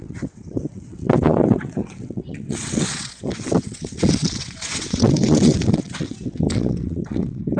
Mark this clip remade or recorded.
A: remade